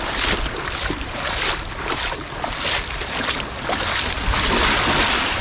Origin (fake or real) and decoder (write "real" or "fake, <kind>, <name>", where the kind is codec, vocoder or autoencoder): real